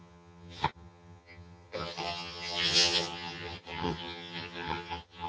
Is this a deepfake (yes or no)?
yes